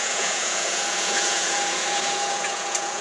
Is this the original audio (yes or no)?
no